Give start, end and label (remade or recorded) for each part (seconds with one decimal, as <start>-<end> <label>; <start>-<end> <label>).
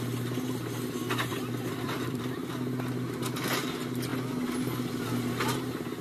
0.0-1.3 recorded; 1.3-2.5 remade; 2.5-6.0 recorded